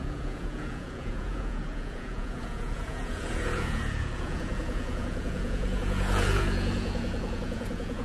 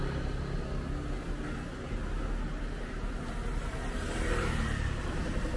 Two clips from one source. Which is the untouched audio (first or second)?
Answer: second